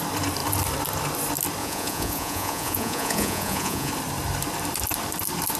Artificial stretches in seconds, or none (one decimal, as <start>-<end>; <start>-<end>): 1.6-3.9